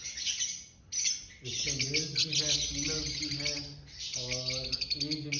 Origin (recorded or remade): recorded